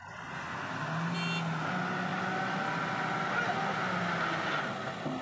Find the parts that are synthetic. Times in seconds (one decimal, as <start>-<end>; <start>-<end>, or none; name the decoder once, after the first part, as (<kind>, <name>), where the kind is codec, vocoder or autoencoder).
none